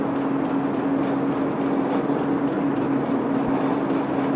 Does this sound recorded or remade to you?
recorded